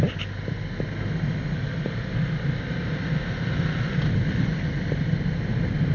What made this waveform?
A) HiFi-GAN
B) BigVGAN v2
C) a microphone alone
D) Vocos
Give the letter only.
C